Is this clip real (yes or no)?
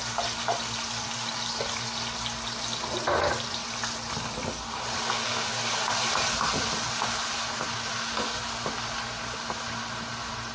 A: yes